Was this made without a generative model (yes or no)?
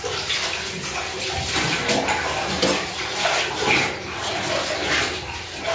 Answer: yes